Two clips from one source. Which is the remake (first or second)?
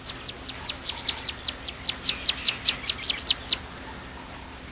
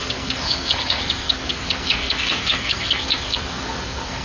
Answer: second